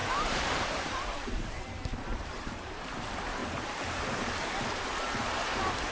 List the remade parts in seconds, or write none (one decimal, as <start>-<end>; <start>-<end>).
0.0-2.8